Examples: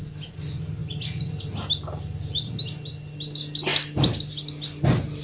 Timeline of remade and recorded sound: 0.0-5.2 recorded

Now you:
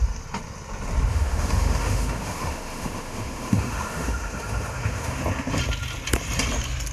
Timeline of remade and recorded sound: 0.0-1.1 recorded; 1.1-5.2 remade; 5.2-6.9 recorded

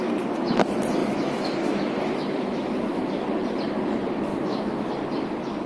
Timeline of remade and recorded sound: 0.0-1.0 recorded; 1.0-3.1 remade; 3.1-4.3 recorded; 4.3-4.9 remade; 4.9-5.7 recorded